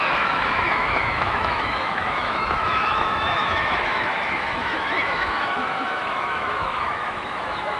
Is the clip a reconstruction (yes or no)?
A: yes